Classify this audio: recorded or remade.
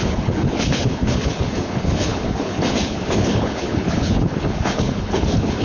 remade